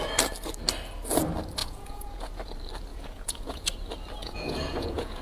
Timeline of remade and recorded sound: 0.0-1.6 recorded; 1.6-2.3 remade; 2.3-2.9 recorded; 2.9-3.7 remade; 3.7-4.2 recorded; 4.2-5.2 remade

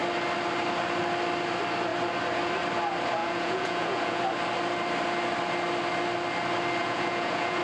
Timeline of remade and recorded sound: 0.0-3.2 recorded; 3.2-4.2 remade; 4.2-6.8 recorded; 6.8-7.6 remade